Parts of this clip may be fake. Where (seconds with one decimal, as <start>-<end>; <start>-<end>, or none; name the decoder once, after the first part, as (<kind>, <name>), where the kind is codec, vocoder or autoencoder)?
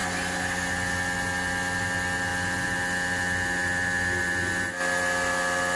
none